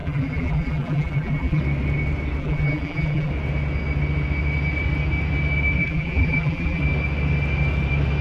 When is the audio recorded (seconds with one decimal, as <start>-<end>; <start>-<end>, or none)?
1.6-2.4; 3.3-5.8; 6.8-8.2